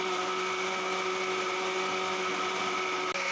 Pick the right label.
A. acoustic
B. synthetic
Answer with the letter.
A